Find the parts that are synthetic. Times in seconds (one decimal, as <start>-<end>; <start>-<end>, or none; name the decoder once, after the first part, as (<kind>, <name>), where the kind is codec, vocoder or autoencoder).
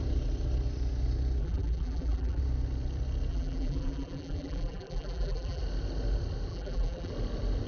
1.4-2.4 (vocoder, BigVGAN v2); 3.3-5.6; 6.5-7.1